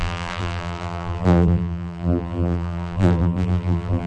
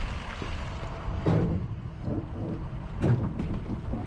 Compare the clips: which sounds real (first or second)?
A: second